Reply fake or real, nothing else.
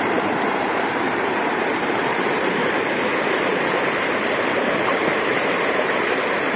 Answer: fake